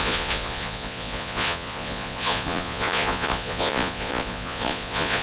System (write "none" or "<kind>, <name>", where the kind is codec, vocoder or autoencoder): vocoder, Vocos